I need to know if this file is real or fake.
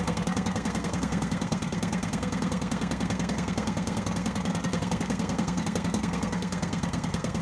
fake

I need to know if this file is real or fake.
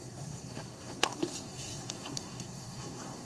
fake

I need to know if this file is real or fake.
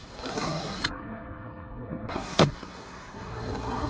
fake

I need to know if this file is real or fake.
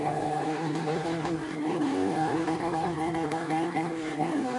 fake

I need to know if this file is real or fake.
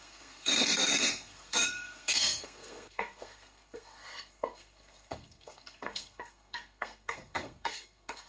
fake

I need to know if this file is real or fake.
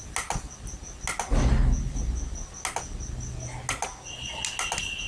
real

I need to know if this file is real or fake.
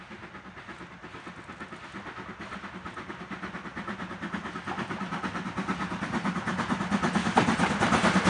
real